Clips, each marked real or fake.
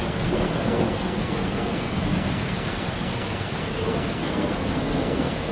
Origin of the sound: fake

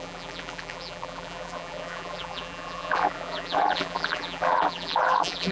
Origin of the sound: fake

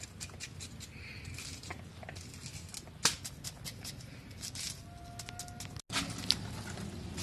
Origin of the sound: real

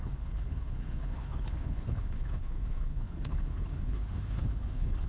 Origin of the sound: fake